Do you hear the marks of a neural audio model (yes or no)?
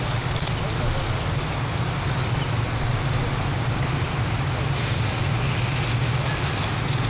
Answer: no